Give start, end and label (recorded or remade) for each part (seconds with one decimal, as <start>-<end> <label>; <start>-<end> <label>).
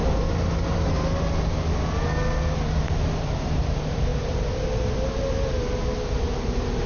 0.0-2.8 recorded; 2.8-6.9 remade